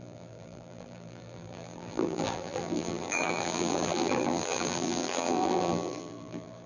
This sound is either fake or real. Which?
fake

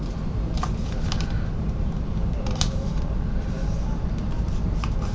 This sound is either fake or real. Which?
fake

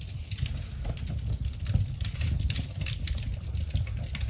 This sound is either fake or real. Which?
real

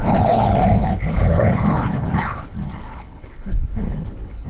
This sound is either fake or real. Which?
fake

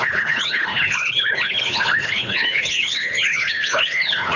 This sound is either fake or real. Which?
fake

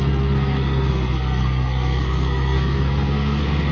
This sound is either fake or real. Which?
fake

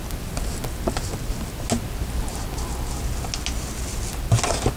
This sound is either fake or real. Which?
real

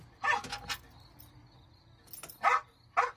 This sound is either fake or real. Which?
real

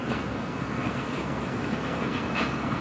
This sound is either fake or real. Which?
fake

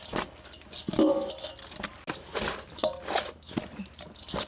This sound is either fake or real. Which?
real